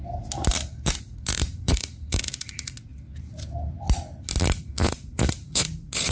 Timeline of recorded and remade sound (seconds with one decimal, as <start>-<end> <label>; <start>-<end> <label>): 0.0-1.0 recorded; 1.0-2.9 remade; 2.9-4.6 recorded; 4.6-6.1 remade